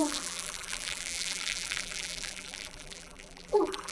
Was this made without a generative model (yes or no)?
no